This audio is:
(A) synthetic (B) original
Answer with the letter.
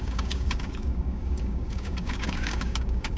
A